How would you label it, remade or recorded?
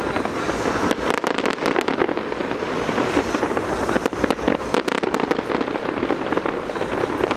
recorded